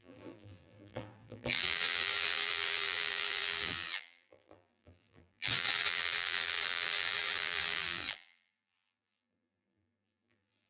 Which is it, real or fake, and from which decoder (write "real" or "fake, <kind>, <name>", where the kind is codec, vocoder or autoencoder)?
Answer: fake, vocoder, BigVGAN v2